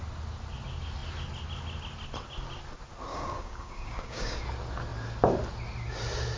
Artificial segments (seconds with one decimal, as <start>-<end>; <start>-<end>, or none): 3.1-4.4